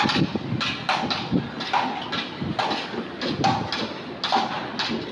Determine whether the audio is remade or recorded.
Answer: recorded